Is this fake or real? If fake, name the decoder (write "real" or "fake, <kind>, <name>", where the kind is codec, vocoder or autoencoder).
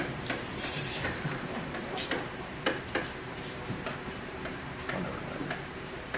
fake, vocoder, BigVGAN v2